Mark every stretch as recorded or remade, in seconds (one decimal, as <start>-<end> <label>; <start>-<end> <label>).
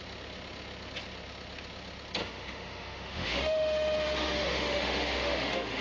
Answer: 0.0-2.2 recorded; 2.2-5.8 remade